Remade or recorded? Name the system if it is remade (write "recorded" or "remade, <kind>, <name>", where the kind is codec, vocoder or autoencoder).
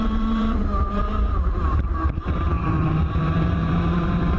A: remade, vocoder, BigVGAN v2